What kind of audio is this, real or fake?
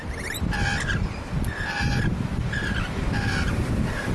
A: real